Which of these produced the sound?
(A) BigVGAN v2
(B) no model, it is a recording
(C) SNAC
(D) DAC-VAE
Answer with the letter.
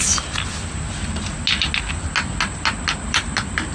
B